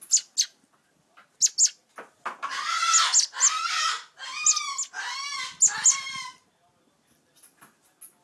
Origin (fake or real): real